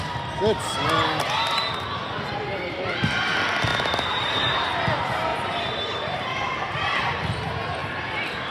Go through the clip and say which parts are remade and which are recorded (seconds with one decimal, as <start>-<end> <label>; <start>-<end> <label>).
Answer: 0.0-3.7 recorded; 3.7-4.7 remade; 4.7-5.3 recorded; 5.3-7.0 remade; 7.0-8.5 recorded